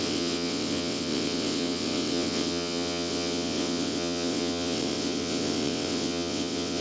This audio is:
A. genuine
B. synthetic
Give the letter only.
B